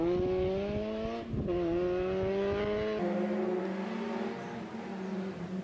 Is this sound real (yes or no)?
yes